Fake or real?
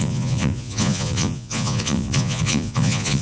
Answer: fake